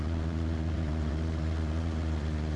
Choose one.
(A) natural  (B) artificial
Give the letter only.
B